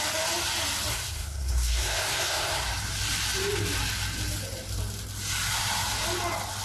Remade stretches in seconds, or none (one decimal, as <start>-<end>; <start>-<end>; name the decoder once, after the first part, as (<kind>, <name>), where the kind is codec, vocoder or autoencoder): 0.9-2.7 (codec, SNAC)